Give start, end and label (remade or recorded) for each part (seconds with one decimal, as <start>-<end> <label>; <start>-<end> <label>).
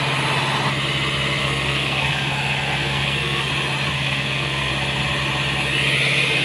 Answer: 0.0-1.4 recorded; 1.4-3.5 remade; 3.5-3.9 recorded; 3.9-4.7 remade; 4.7-6.4 recorded